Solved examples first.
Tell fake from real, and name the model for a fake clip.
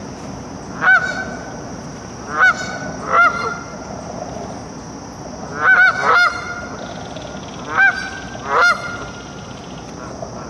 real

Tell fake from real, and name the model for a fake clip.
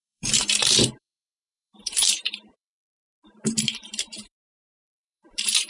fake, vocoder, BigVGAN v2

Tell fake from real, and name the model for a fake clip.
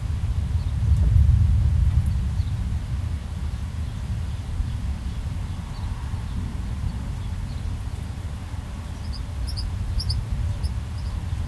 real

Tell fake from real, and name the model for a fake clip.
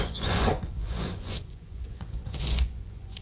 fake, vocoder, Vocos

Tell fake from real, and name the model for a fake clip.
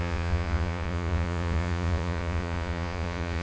fake, vocoder, Vocos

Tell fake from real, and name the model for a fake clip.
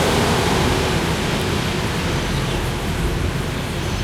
real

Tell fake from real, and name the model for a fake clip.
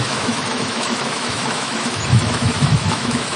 fake, autoencoder, DAC-VAE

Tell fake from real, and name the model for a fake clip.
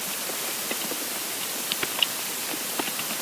real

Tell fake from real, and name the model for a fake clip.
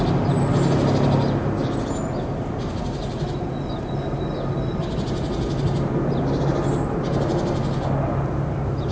real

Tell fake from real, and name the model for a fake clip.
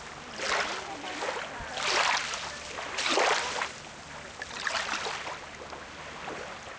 real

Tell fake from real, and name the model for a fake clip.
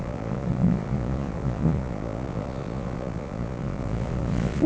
fake, vocoder, Vocos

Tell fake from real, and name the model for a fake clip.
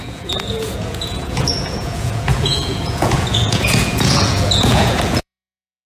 fake, vocoder, Vocos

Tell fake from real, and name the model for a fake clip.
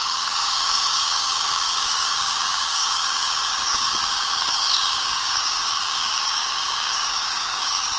fake, codec, DAC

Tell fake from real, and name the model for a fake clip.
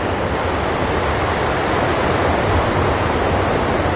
real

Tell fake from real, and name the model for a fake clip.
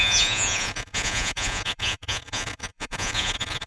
fake, vocoder, Vocos